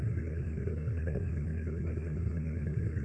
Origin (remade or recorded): remade